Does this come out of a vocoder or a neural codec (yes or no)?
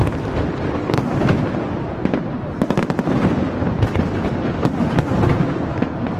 no